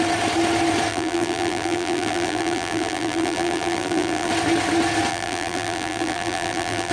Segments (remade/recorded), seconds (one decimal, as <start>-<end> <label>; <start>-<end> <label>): 0.0-0.9 recorded; 0.9-4.3 remade; 4.3-5.1 recorded; 5.1-6.9 remade